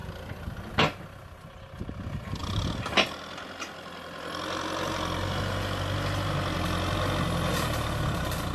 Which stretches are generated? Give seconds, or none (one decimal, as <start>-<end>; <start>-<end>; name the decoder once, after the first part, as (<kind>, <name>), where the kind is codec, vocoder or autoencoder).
none